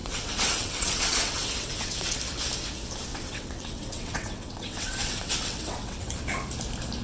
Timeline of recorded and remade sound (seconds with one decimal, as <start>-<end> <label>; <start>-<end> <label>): 0.0-2.2 remade; 2.2-3.1 recorded; 3.1-6.1 remade; 6.1-7.0 recorded